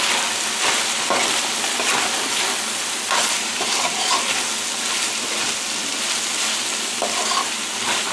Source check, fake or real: real